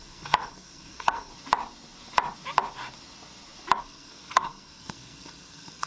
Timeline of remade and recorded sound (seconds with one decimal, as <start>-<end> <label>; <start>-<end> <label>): 0.0-1.3 remade; 1.3-3.8 recorded; 3.8-5.9 remade